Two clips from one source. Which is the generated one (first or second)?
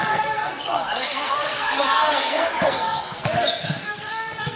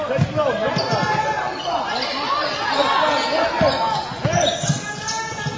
first